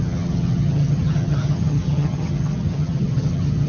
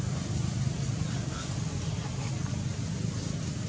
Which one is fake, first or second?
first